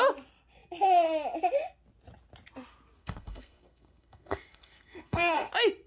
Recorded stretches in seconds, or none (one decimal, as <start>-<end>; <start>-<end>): 0.0-3.0; 5.5-5.9